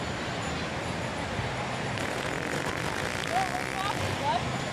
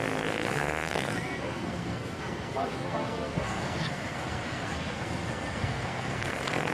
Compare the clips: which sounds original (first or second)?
first